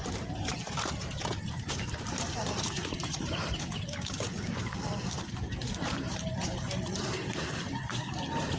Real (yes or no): no